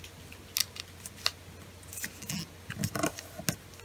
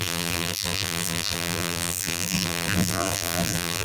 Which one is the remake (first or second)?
second